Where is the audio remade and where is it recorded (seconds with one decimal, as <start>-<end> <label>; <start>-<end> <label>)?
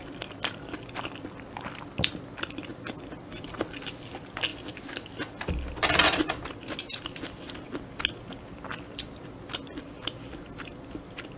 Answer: 0.0-11.4 recorded